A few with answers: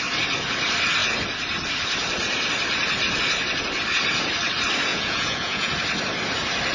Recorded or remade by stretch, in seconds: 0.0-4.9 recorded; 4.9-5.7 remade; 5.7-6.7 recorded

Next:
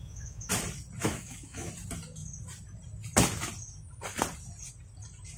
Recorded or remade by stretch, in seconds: 0.0-0.5 remade; 0.5-1.0 recorded; 1.0-1.7 remade; 1.7-5.4 recorded

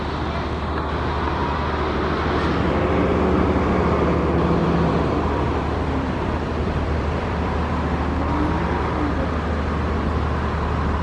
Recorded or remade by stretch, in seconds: 0.0-4.6 recorded; 4.6-7.7 remade; 7.7-11.0 recorded